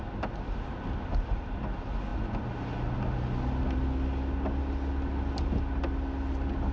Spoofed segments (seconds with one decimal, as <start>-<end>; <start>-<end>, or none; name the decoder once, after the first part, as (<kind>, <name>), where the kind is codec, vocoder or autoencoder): none

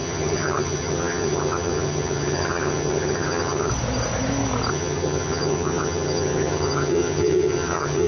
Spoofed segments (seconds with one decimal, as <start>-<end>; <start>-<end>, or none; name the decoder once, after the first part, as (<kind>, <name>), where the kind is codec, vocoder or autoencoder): 0.0-3.7 (vocoder, HiFi-GAN); 4.7-8.1

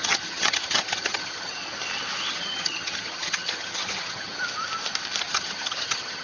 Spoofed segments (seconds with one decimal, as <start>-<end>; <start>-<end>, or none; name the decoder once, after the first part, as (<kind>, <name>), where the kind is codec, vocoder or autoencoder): 0.0-1.6 (vocoder, HiFi-GAN); 2.3-4.4; 5.2-6.2

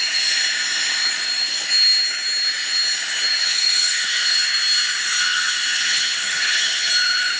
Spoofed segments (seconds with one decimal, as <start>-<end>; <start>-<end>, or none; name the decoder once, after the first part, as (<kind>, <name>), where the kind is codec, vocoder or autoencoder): 3.4-4.5 (vocoder, HiFi-GAN); 5.2-6.9

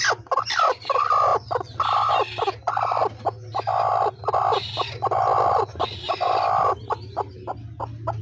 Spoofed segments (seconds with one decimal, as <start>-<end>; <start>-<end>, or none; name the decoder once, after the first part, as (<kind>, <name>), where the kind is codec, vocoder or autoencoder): none

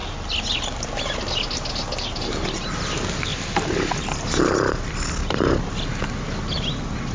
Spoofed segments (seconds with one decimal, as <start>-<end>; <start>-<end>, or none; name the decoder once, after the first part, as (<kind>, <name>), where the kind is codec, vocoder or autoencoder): none